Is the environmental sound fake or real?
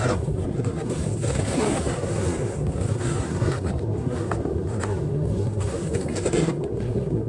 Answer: fake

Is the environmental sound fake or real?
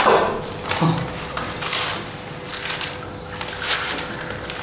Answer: real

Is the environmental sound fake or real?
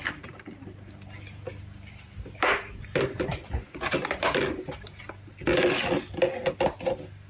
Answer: real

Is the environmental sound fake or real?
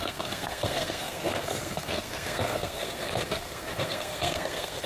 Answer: fake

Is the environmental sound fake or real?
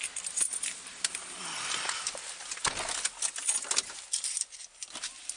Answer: real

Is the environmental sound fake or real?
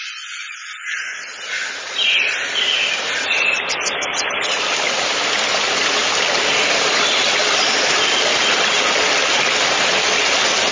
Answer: real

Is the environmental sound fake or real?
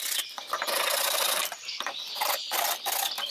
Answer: fake